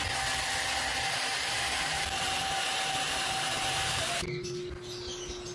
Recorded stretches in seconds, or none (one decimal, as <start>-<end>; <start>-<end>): 0.0-0.9; 4.2-5.5